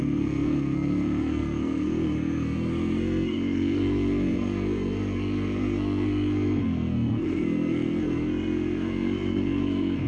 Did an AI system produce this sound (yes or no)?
yes